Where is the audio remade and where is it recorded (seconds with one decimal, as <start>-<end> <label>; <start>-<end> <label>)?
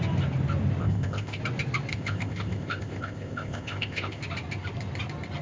0.0-0.8 recorded; 0.8-1.4 remade; 1.4-1.9 recorded; 1.9-4.2 remade; 4.2-5.4 recorded